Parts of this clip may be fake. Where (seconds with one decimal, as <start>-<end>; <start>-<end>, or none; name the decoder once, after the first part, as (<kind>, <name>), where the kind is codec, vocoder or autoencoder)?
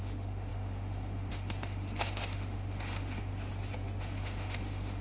0.0-3.3 (autoencoder, DAC-VAE); 4.0-5.0